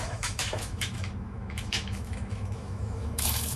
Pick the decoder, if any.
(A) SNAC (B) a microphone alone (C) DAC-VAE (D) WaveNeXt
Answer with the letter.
C